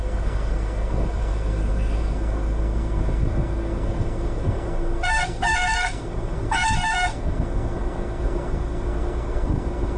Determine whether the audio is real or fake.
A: fake